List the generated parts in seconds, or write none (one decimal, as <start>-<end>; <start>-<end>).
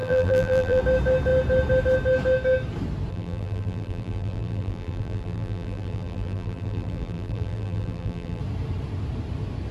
0.0-0.8; 3.1-8.4